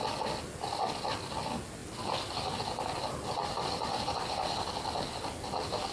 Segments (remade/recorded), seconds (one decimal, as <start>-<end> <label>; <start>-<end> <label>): 0.0-5.9 recorded